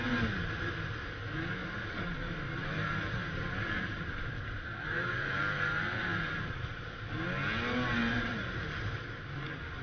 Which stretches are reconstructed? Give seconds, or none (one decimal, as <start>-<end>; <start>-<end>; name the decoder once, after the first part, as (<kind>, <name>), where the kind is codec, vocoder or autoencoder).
1.6-6.8 (vocoder, BigVGAN v2); 8.0-9.2

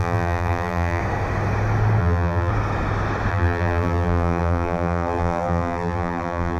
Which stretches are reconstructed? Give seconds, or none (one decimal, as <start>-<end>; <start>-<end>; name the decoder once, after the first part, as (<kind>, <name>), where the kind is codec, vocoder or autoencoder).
0.0-1.0 (vocoder, BigVGAN v2); 2.0-2.5; 3.3-6.6

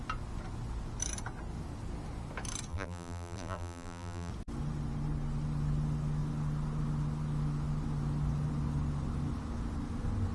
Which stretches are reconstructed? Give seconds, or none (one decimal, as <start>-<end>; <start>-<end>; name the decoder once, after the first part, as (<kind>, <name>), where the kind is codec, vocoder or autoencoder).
2.7-4.3 (vocoder, BigVGAN v2)